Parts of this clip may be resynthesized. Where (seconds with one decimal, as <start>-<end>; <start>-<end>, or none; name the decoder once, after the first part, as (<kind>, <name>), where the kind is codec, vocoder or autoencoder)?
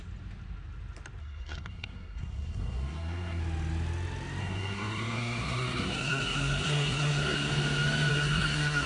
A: 1.2-3.4 (codec, SNAC); 4.4-7.5; 8.1-8.9